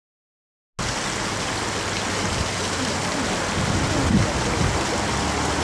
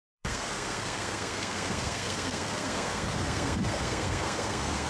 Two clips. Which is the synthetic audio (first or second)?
second